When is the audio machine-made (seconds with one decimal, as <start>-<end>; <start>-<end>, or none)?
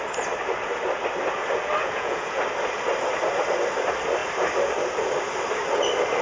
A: 1.8-2.4